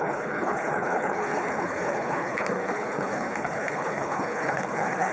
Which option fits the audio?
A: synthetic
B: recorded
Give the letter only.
A